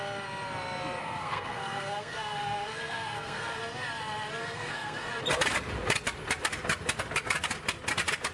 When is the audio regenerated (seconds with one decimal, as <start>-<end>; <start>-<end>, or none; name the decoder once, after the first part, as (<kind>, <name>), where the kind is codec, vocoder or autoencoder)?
1.0-3.6 (codec, SNAC); 4.4-5.1